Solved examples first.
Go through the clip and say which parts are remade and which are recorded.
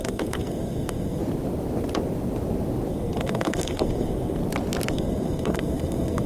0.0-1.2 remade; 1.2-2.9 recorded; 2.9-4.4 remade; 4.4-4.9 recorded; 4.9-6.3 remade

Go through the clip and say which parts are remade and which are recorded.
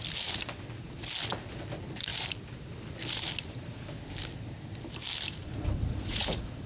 0.0-5.4 recorded; 5.4-6.7 remade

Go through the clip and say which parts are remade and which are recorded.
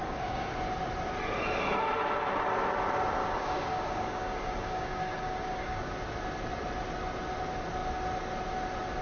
0.0-0.6 remade; 0.6-3.2 recorded; 3.2-5.9 remade; 5.9-9.0 recorded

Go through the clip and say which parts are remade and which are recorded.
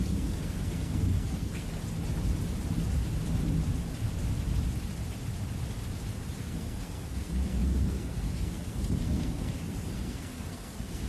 0.0-1.8 remade; 1.8-6.4 recorded; 6.4-11.1 remade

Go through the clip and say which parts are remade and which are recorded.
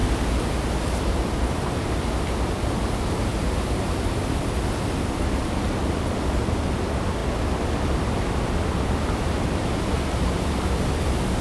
0.0-11.4 recorded